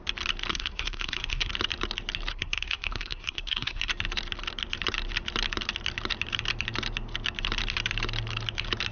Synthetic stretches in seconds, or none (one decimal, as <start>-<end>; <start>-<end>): 0.5-1.5; 2.3-3.9